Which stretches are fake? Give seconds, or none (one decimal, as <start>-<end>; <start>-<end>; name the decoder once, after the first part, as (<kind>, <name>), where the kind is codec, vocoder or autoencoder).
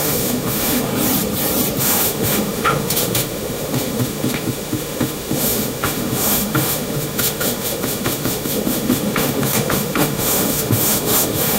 0.0-0.9 (autoencoder, DAC-VAE); 1.8-11.6